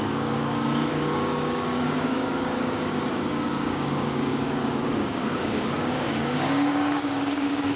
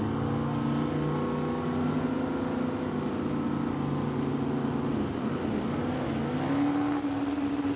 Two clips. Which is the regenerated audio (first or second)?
first